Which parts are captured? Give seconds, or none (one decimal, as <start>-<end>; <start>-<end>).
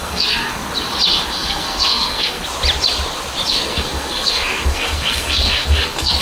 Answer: 0.6-1.3; 2.4-3.5